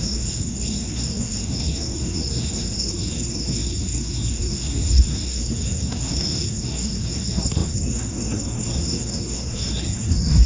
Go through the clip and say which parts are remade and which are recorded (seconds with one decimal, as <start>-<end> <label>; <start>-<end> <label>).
0.0-10.5 remade